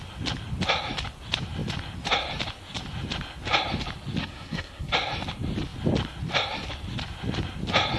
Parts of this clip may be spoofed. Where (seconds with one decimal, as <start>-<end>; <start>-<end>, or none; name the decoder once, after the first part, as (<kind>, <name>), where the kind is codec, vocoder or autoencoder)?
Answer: 4.2-4.9 (codec, SNAC)